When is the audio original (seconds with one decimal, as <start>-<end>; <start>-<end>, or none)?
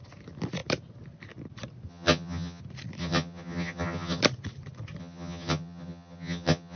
0.0-1.9; 2.6-3.0; 4.2-5.0